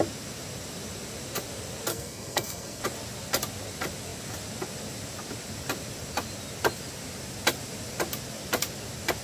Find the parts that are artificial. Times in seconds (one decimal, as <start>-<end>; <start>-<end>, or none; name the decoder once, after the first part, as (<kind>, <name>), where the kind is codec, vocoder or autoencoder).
1.9-2.8 (codec, SNAC)

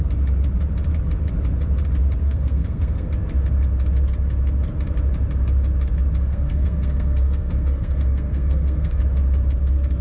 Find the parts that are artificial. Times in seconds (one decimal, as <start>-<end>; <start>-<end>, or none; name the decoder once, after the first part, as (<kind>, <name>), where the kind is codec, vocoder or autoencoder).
2.2-3.1 (codec, SNAC); 6.3-9.0

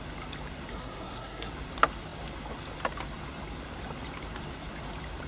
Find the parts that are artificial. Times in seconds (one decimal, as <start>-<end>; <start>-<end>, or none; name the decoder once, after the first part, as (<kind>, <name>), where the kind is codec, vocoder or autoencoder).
0.7-1.5 (codec, SNAC)

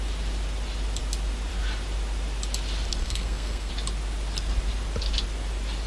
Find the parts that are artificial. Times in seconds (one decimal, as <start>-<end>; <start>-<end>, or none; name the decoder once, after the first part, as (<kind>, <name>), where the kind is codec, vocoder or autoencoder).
3.0-3.7 (codec, SNAC)

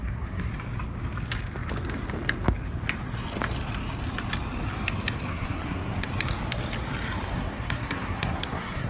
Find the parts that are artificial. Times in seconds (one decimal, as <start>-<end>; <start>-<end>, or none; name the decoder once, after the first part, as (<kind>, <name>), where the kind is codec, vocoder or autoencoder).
0.0-0.5 (codec, SNAC); 5.3-6.1; 7.3-8.9